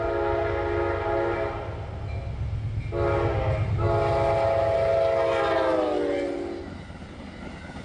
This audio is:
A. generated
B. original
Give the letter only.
B